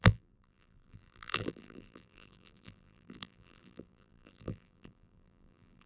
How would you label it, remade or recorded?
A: remade